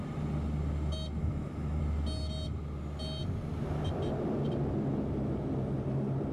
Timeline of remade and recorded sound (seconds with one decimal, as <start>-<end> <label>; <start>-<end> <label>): 0.0-1.2 recorded; 1.2-1.8 remade; 1.8-6.3 recorded